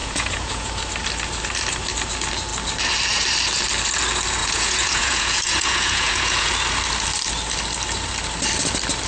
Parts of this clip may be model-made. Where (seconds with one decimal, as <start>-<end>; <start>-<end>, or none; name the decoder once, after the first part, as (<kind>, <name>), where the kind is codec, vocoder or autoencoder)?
0.0-0.7 (vocoder, Vocos); 4.4-6.5